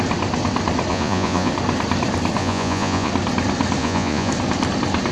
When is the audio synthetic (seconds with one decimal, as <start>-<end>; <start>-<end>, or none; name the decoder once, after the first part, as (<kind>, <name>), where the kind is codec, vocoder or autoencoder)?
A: 0.9-1.5 (vocoder, Vocos); 2.4-3.1; 3.8-4.3